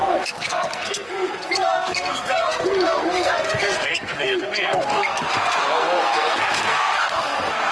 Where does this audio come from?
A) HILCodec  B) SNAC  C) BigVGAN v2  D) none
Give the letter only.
B